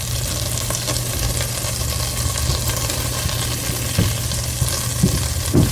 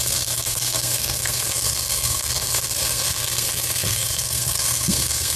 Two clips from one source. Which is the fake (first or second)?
second